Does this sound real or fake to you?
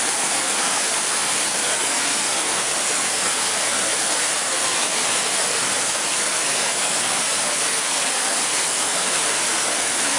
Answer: fake